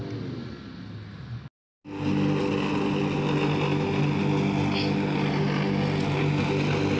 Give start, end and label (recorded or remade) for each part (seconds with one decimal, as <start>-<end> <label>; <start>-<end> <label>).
0.0-7.0 recorded